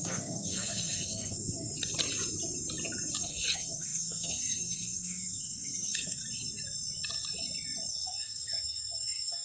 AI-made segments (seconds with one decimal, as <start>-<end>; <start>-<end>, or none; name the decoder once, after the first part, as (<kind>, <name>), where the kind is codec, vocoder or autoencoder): 0.0-1.7 (codec, SNAC); 3.2-6.2; 7.9-9.4